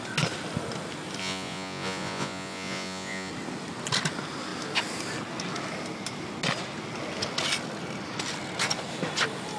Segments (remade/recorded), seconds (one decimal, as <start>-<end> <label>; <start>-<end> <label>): 0.0-1.2 recorded; 1.2-3.3 remade; 3.3-9.6 recorded